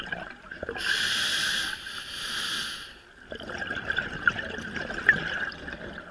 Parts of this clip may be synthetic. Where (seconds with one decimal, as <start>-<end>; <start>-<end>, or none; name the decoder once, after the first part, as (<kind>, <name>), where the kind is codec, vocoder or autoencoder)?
none